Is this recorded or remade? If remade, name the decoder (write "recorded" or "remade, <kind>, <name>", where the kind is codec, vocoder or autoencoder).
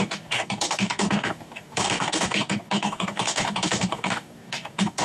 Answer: remade, codec, DAC